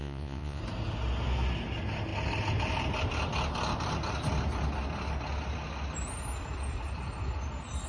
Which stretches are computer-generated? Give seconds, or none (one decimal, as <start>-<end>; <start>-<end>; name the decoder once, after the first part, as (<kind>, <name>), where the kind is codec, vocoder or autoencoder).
0.0-0.6 (vocoder, Vocos)